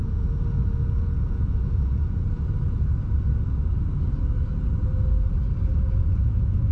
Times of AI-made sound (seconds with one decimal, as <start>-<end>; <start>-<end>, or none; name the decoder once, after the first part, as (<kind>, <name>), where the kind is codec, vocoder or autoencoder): 0.0-2.4 (vocoder, Vocos); 5.7-6.7